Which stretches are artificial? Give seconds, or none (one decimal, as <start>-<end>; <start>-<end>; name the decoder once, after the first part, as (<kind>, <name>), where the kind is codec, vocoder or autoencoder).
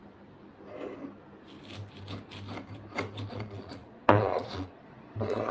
3.3-5.5 (vocoder, Vocos)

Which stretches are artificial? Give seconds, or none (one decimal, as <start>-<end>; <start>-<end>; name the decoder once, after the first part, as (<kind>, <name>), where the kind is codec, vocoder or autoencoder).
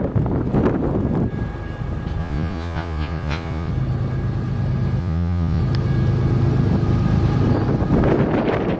2.2-3.7 (vocoder, Vocos); 5.0-5.6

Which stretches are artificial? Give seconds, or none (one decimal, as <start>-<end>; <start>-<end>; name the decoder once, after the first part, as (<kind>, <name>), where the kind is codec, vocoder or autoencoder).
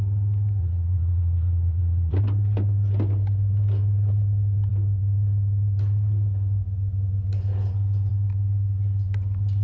0.6-2.2 (vocoder, Vocos)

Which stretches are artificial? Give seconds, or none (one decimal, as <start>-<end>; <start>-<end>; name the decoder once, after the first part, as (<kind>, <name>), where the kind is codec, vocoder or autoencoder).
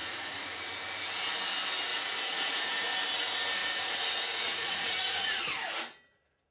0.0-0.7 (vocoder, Vocos); 1.9-2.9; 3.6-5.4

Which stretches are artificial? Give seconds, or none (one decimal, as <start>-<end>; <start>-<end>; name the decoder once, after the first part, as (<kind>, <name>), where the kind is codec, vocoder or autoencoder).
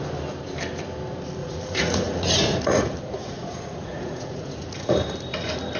1.4-4.9 (vocoder, Vocos)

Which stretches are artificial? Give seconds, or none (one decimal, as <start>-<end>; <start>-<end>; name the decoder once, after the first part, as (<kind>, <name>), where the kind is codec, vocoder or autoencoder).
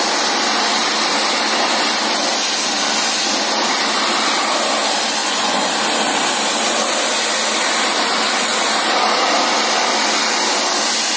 5.2-5.7 (vocoder, Vocos)